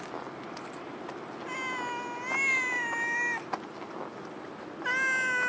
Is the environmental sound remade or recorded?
recorded